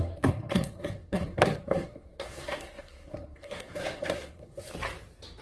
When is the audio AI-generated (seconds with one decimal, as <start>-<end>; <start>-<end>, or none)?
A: 0.0-4.7